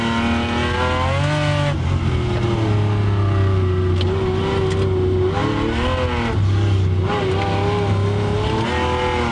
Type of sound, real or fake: real